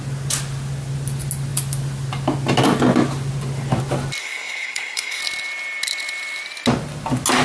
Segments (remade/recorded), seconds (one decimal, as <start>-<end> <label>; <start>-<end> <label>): 0.0-4.2 recorded; 4.2-5.2 remade; 5.2-7.4 recorded